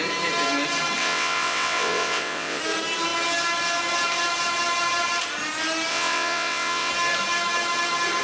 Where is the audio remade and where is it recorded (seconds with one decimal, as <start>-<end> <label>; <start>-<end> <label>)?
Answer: 0.0-1.0 recorded; 1.0-2.6 remade; 2.6-5.9 recorded; 5.9-6.9 remade; 6.9-8.2 recorded